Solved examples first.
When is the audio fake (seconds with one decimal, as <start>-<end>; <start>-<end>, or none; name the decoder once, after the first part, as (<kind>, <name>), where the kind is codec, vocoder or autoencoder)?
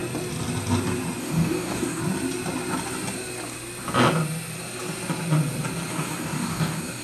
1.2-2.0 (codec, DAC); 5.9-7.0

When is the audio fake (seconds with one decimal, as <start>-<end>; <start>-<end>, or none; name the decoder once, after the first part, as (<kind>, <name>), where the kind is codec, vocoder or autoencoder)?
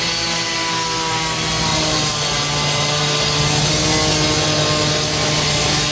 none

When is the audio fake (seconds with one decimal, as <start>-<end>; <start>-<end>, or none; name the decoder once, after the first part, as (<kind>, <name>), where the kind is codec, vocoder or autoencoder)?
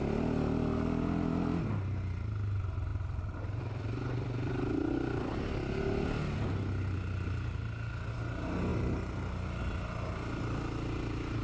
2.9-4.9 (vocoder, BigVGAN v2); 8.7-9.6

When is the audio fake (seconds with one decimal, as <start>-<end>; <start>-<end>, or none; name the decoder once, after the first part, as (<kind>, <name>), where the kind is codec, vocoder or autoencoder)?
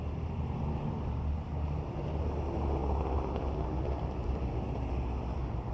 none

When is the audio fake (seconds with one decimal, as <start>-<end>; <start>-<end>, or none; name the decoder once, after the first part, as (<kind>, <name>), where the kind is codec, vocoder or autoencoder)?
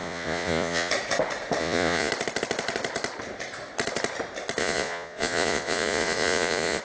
0.0-0.9 (vocoder, Vocos); 1.6-2.1; 4.6-6.8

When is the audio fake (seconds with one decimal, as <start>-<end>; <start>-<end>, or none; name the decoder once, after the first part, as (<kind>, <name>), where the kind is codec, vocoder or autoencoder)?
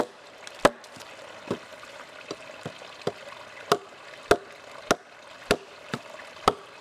none